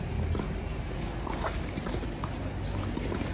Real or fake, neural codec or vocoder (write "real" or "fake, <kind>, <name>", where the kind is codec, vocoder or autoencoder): real